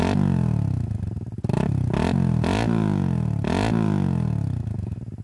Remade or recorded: recorded